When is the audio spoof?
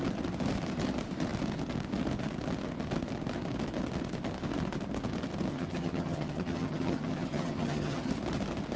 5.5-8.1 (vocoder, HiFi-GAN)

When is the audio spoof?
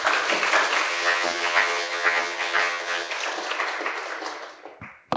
0.9-3.1 (vocoder, HiFi-GAN)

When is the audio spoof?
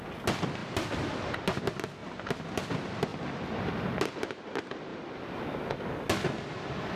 0.6-1.3 (vocoder, BigVGAN v2); 4.9-5.4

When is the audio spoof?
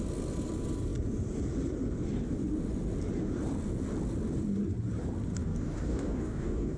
5.4-6.8 (codec, DAC)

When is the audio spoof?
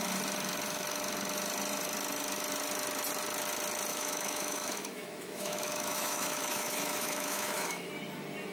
3.9-7.9 (autoencoder, DAC-VAE)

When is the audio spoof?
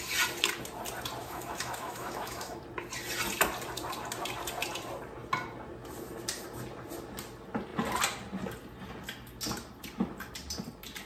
1.2-2.6 (autoencoder, DAC-VAE)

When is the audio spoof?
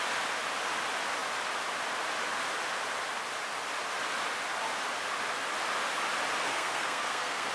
6.4-7.5 (codec, SNAC)